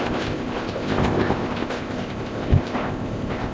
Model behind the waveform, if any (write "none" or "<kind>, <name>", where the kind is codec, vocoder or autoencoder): codec, ZipCodec